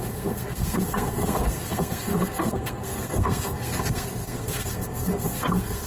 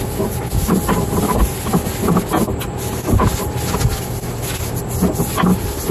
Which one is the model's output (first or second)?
first